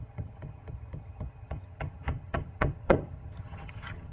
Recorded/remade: remade